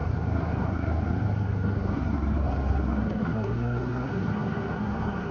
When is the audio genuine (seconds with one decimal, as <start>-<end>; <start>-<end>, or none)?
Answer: none